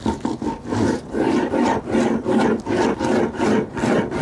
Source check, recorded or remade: recorded